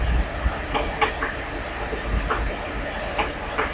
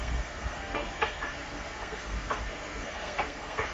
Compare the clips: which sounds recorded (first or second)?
first